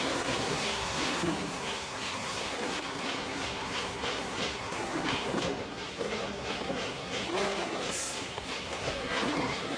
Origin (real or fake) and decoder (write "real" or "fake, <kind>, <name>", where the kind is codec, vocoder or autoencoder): fake, codec, SNAC